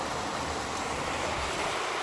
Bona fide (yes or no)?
yes